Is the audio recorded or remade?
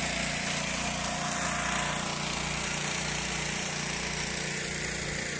recorded